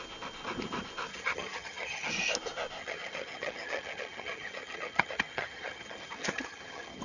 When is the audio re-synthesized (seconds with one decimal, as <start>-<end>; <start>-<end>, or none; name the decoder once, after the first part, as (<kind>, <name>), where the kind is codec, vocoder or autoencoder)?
1.1-2.1 (vocoder, HiFi-GAN); 2.8-7.0